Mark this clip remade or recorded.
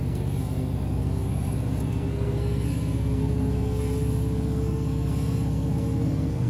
remade